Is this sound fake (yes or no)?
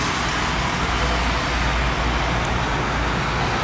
no